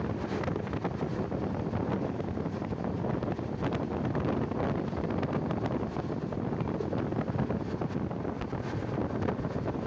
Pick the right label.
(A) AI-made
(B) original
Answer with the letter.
B